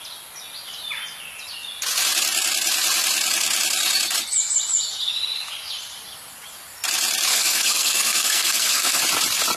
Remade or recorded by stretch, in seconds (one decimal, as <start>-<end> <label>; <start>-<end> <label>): 0.0-7.3 recorded; 7.3-9.0 remade; 9.0-9.6 recorded